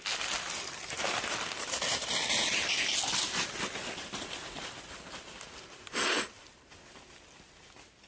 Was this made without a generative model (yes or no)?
yes